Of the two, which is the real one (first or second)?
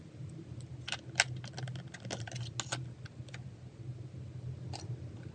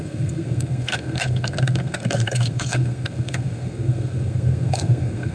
first